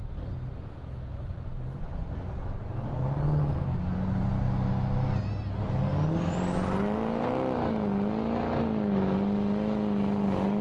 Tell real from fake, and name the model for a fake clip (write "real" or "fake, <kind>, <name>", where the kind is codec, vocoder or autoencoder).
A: real